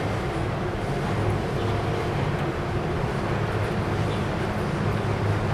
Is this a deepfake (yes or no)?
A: no